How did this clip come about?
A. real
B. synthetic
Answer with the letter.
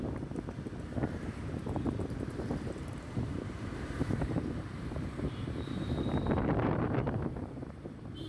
B